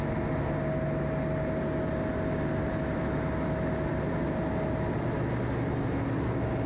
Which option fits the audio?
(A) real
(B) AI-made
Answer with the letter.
A